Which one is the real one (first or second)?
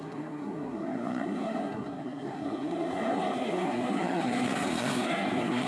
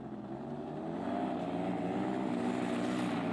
second